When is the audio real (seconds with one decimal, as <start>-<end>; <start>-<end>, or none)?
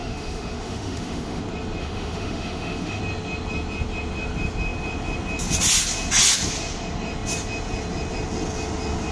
1.4-1.8; 3.0-9.1